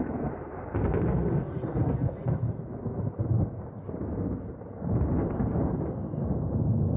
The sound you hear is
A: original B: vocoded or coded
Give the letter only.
A